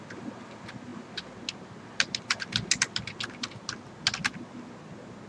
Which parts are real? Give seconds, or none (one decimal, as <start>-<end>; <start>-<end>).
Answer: 0.0-5.3